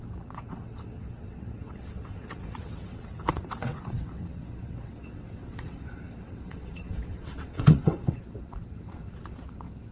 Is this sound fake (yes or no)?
yes